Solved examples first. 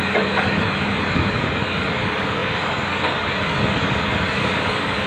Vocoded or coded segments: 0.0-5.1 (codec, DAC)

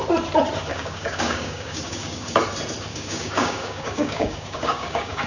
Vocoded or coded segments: 0.7-2.4 (codec, DAC); 2.9-5.3

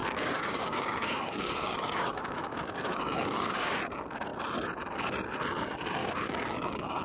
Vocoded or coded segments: 0.0-3.8 (codec, DAC); 6.0-7.0

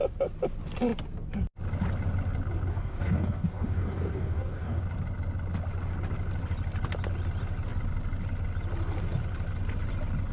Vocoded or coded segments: 2.7-4.8 (codec, DAC)

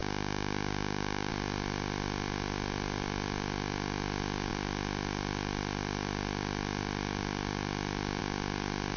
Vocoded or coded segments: 0.0-1.3 (codec, DAC)

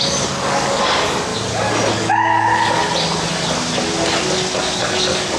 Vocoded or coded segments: 0.0-1.3 (codec, DAC); 1.9-2.8; 4.6-5.4

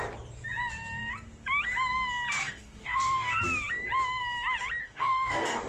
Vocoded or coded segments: 2.4-3.4 (codec, DAC); 4.8-5.7

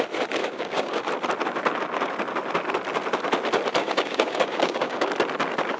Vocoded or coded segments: 0.4-1.0 (codec, DAC); 3.8-5.1